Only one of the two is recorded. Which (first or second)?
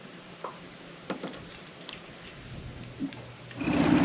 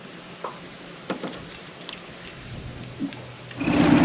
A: second